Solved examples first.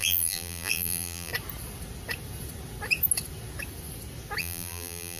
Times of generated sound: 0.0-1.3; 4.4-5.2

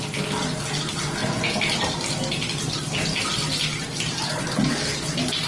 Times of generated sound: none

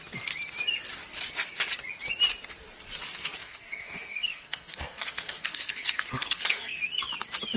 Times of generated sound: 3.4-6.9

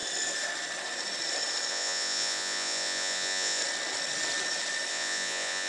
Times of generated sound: 1.7-3.6; 4.9-5.7